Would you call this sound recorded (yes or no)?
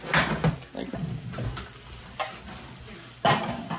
yes